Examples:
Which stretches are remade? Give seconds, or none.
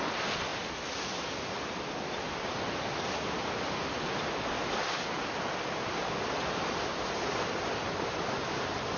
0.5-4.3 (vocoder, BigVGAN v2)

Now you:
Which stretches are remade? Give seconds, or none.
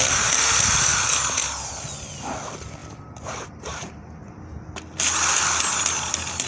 0.9-1.8 (vocoder, BigVGAN v2); 2.8-5.6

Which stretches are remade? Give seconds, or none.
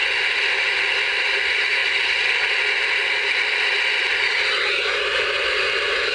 1.8-5.5 (vocoder, BigVGAN v2)